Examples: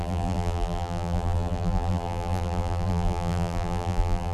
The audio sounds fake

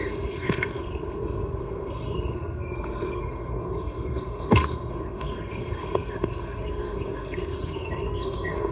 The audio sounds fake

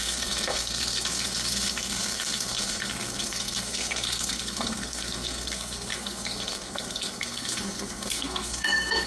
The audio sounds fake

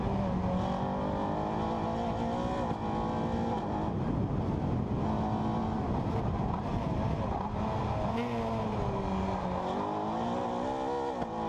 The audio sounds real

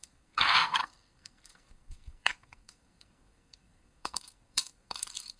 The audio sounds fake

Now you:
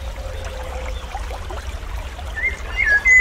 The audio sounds real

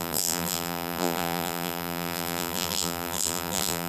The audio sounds fake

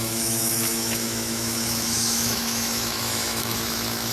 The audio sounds fake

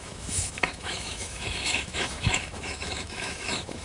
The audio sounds fake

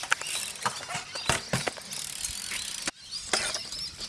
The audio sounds real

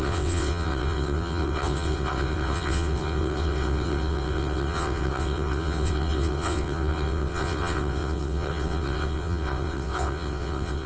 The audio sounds fake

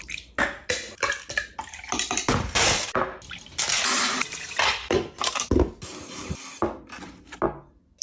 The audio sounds real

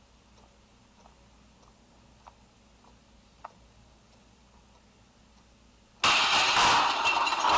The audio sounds real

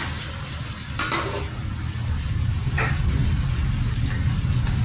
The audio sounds real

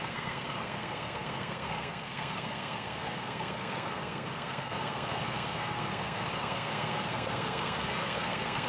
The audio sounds fake